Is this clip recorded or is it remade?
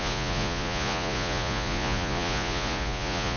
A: remade